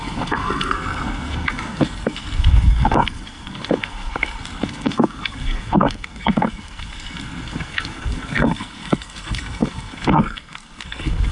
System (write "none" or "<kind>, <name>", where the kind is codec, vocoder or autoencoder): codec, SNAC